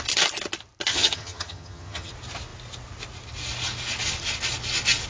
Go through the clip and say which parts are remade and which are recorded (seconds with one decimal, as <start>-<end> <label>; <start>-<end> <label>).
0.0-0.9 recorded; 0.9-2.1 remade; 2.1-5.1 recorded

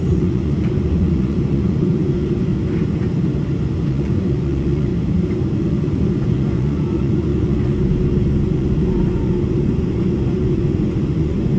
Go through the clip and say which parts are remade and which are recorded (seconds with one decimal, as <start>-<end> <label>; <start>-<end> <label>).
0.0-2.5 remade; 2.5-3.9 recorded; 3.9-4.9 remade; 4.9-5.6 recorded; 5.6-11.6 remade

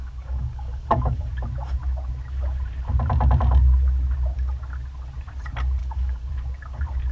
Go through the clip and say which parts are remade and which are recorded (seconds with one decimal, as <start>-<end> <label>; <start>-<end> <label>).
0.0-1.3 remade; 1.3-5.8 recorded; 5.8-6.3 remade; 6.3-7.1 recorded

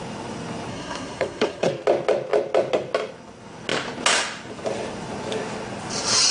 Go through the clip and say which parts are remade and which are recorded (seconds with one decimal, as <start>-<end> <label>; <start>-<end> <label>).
0.0-0.7 recorded; 0.7-1.7 remade; 1.7-6.3 recorded

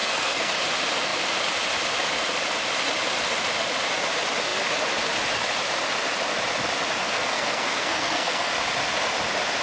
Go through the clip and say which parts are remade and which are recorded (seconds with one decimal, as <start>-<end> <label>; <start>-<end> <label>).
0.0-0.5 remade; 0.5-7.0 recorded; 7.0-8.5 remade; 8.5-9.6 recorded

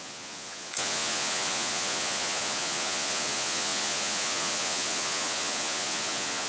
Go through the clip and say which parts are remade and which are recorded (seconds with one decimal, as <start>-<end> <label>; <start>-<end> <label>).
0.0-6.5 remade

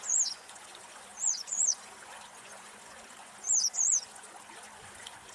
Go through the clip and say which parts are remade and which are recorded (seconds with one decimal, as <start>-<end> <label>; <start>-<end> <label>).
0.0-5.3 remade

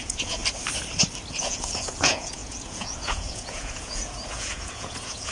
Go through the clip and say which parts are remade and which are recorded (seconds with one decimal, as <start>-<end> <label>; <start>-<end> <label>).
0.0-0.4 remade; 0.4-1.4 recorded; 1.4-5.3 remade